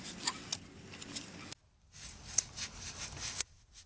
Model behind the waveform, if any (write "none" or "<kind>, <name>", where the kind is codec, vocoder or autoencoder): none